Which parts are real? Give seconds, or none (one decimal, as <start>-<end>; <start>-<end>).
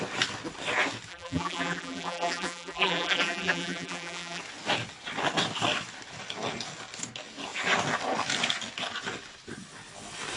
0.0-1.1; 4.4-10.4